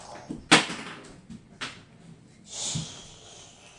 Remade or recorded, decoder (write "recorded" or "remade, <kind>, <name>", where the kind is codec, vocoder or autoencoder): recorded